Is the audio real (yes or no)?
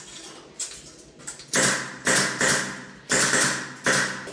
yes